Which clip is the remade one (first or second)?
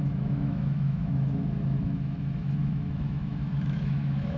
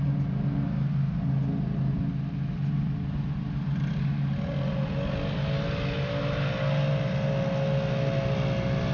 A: first